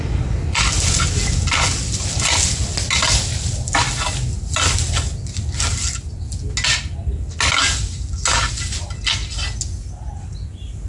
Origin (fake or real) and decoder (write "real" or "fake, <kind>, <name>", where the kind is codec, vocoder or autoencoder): real